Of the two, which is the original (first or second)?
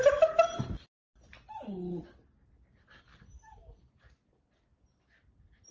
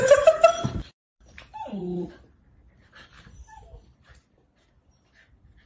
first